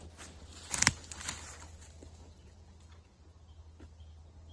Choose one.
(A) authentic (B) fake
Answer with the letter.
A